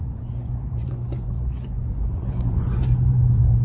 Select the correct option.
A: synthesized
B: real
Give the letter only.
A